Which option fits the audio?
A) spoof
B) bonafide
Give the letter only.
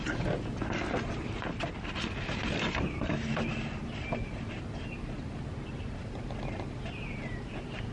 B